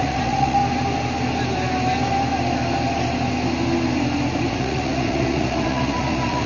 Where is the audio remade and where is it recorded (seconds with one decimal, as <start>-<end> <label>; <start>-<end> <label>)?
0.0-0.6 remade; 0.6-4.5 recorded; 4.5-6.5 remade